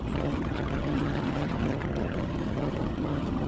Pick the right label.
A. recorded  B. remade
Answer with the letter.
B